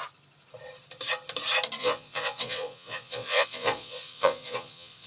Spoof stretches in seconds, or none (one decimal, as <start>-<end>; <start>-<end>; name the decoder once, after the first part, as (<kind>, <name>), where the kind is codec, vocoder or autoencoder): 1.8-5.1 (vocoder, Vocos)